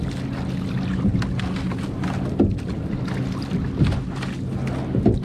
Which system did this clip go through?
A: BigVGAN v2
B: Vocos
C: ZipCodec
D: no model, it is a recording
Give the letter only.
D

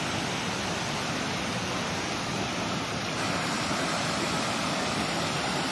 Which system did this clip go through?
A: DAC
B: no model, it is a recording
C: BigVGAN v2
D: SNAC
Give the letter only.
B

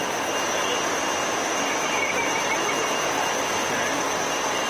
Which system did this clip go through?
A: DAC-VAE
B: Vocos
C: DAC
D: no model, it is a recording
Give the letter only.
D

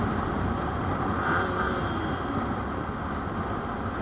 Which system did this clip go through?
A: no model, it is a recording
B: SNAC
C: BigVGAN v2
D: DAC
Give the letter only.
A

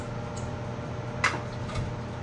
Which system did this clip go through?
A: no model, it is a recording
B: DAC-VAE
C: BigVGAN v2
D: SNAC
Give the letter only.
A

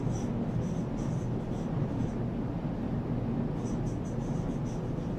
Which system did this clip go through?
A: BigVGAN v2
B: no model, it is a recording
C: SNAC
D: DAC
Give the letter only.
B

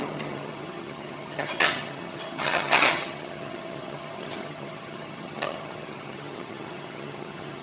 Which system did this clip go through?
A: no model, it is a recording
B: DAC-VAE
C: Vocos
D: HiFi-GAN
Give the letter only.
D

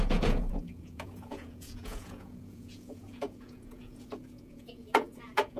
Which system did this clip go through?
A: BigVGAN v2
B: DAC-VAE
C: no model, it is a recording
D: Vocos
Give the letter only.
D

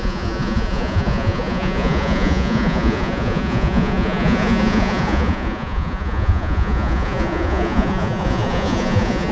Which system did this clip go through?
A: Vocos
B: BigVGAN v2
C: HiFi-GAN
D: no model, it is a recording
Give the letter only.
A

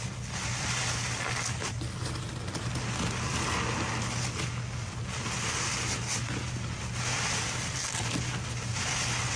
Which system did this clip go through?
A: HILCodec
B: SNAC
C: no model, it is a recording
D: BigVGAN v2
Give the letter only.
C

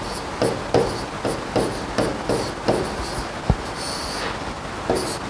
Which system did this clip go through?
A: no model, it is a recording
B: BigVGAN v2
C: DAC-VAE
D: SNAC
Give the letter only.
A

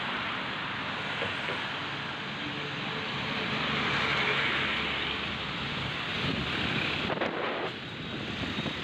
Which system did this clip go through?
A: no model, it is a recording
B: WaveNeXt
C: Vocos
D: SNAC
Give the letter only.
A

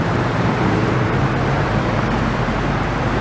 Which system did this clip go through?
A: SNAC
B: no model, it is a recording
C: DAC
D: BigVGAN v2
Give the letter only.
D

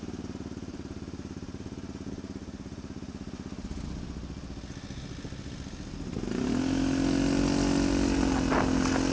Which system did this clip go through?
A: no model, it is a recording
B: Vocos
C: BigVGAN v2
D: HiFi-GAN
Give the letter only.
A